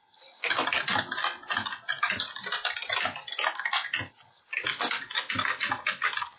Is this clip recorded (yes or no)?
yes